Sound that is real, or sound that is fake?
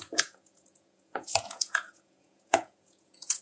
fake